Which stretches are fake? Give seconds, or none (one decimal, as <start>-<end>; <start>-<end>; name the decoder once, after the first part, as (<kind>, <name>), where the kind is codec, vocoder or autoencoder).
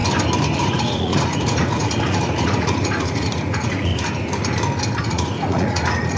0.6-3.9 (vocoder, Vocos); 5.0-6.2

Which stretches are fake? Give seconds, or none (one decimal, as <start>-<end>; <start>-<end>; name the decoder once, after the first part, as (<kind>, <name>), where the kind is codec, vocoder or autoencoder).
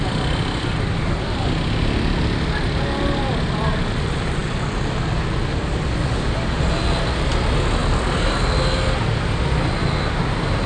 none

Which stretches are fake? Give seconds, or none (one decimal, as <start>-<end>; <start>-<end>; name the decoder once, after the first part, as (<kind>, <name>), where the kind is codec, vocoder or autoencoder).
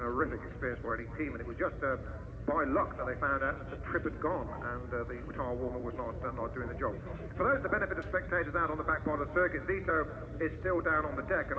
0.0-0.9 (vocoder, BigVGAN v2); 5.8-8.1; 9.9-11.6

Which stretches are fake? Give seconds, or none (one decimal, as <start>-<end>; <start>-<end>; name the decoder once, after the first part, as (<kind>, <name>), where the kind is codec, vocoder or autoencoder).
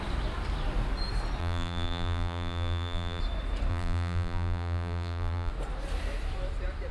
1.4-3.2 (vocoder, BigVGAN v2); 3.7-5.5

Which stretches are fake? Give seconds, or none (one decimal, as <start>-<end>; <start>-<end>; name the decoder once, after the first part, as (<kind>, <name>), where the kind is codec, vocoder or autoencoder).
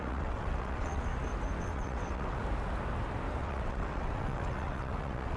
0.0-1.1 (vocoder, WaveNeXt); 1.6-2.4; 3.4-5.4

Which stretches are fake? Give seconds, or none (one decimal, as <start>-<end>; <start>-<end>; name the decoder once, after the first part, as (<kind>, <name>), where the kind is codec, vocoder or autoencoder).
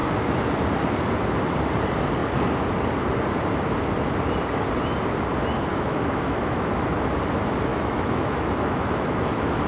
5.7-6.7 (autoencoder, DAC-VAE); 7.7-9.7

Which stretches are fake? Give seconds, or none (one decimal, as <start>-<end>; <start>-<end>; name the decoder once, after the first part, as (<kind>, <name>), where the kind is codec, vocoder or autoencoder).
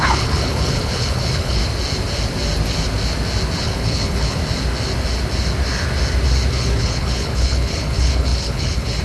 0.0-1.6 (codec, HILCodec); 3.6-4.4; 6.5-9.0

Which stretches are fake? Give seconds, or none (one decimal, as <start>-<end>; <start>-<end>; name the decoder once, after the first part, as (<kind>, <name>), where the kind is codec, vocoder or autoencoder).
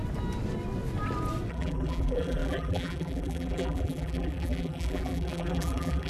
1.5-6.1 (vocoder, BigVGAN v2)